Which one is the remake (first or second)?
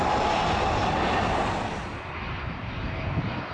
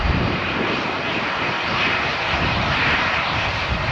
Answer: second